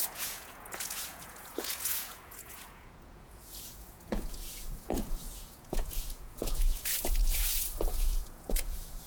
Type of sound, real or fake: fake